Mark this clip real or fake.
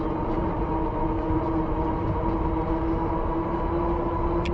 real